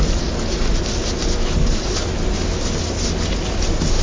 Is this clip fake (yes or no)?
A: no